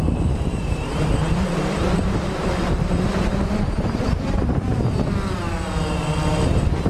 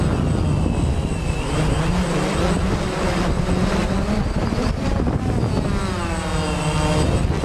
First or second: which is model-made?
first